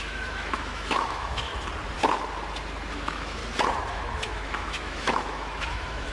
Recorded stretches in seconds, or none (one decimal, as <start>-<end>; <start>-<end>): 1.5-2.9; 3.4-3.9